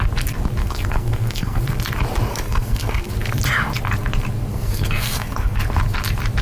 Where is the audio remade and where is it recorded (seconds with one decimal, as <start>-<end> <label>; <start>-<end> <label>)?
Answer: 0.0-0.6 recorded; 0.6-1.6 remade; 1.6-2.3 recorded; 2.3-3.1 remade; 3.1-4.5 recorded; 4.5-5.6 remade; 5.6-6.4 recorded